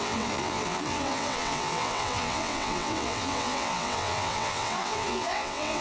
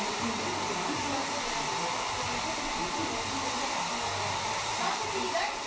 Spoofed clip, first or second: first